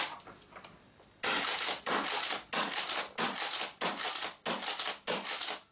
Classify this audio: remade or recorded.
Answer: recorded